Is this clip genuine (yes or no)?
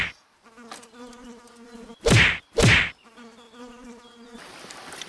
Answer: yes